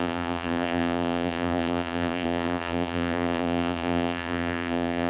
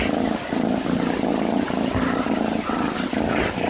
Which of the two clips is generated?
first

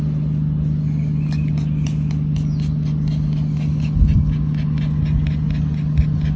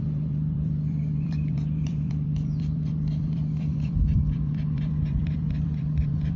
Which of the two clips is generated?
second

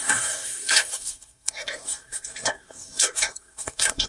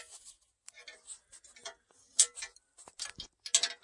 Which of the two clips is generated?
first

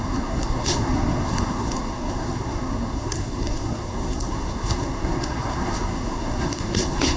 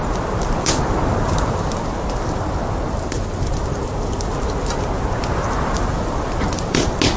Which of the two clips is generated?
first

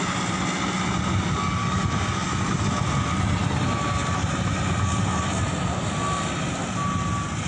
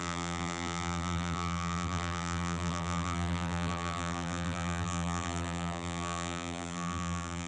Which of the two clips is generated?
second